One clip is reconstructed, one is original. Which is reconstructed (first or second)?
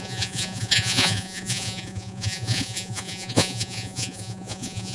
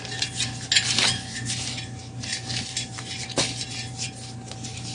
first